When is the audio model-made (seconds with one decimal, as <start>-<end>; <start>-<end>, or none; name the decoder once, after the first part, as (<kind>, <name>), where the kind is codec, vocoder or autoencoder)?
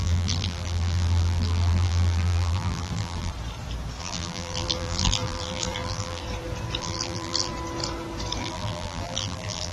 0.0-3.3 (vocoder, BigVGAN v2); 4.0-6.2; 6.8-7.5; 8.4-9.7